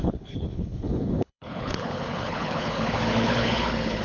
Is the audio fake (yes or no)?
yes